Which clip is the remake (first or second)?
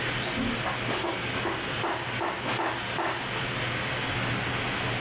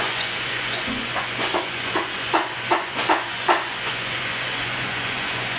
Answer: second